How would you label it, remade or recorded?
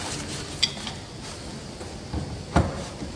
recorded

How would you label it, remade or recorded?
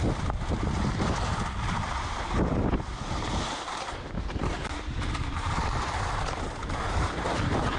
recorded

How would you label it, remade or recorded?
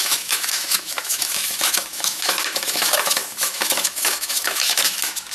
remade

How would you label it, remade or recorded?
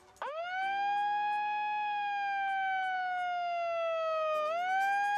recorded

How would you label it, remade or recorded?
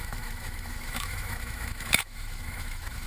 remade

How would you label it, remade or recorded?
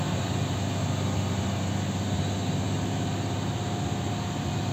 recorded